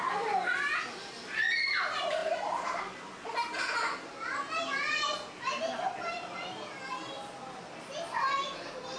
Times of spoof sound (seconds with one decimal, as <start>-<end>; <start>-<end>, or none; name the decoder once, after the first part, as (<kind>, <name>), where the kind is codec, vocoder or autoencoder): none